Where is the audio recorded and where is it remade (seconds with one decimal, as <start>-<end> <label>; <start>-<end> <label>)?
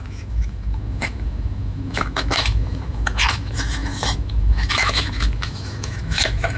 0.0-6.6 remade